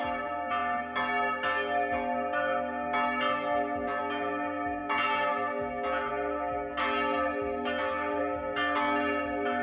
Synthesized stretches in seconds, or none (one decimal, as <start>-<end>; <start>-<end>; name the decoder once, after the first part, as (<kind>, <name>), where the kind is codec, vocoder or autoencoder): none